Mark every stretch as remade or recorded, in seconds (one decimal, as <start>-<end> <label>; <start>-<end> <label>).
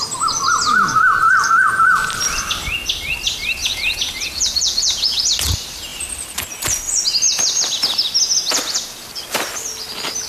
0.0-3.6 recorded; 3.6-5.2 remade; 5.2-10.3 recorded